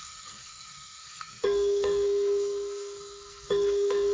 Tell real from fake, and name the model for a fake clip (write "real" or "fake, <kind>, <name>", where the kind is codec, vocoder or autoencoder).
fake, codec, SNAC